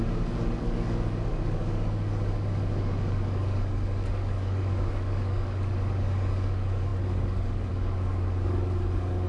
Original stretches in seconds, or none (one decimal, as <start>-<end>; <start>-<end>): none